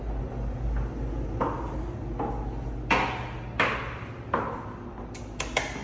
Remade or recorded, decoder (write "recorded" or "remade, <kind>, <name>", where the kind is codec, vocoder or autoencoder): recorded